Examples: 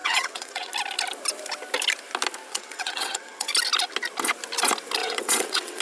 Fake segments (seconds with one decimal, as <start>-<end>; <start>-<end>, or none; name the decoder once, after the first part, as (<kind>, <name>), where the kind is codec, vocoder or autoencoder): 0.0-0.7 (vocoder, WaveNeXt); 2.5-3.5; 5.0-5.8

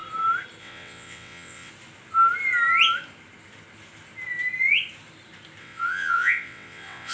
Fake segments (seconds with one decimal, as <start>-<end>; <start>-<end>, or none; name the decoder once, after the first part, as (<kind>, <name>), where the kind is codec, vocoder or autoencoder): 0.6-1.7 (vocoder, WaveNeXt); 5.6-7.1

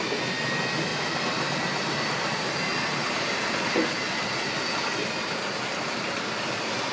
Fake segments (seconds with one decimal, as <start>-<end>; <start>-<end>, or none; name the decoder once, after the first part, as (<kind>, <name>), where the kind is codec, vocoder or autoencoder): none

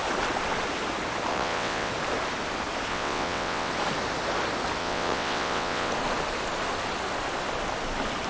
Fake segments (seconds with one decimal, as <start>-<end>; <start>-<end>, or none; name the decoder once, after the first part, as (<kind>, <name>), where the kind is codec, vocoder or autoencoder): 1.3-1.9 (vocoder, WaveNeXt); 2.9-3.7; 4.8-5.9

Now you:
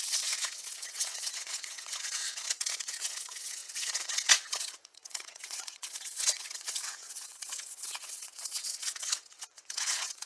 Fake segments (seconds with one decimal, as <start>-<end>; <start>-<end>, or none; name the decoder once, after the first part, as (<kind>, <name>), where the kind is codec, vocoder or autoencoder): 0.0-10.3 (vocoder, WaveNeXt)

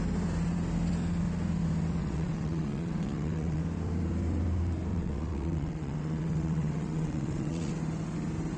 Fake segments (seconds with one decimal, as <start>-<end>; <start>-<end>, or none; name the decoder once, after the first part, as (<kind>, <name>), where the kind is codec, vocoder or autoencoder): 2.0-3.6 (vocoder, WaveNeXt); 4.9-7.7